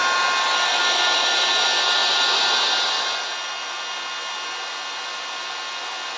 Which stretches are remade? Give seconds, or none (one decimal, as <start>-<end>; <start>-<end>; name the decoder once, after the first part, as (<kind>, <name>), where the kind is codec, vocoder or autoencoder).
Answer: none